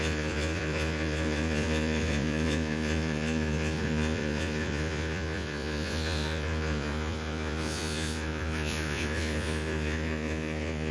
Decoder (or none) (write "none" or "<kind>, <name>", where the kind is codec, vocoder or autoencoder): vocoder, Vocos